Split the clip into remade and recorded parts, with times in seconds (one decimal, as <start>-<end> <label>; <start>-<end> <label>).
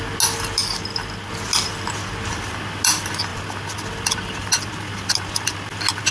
0.0-6.1 recorded